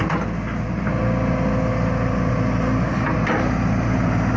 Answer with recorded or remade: recorded